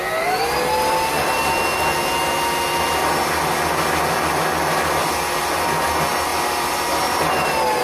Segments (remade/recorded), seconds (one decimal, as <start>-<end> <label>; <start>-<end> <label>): 0.0-6.3 recorded; 6.3-7.2 remade; 7.2-7.8 recorded